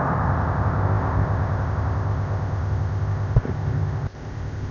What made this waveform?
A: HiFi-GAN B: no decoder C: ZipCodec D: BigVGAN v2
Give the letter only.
C